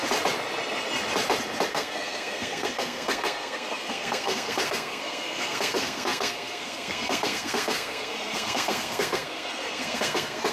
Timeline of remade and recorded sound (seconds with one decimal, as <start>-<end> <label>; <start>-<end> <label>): 0.0-1.7 recorded; 1.7-10.5 remade